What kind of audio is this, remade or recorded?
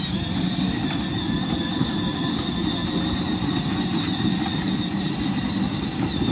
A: recorded